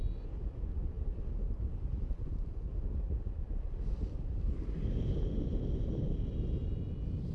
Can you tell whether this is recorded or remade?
recorded